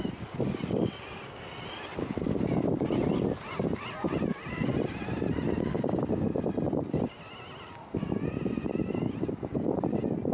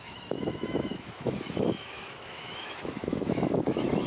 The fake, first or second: second